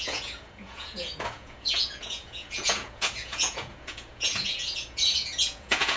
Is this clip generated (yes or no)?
yes